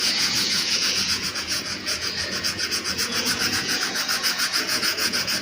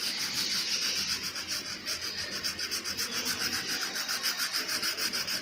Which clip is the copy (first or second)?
first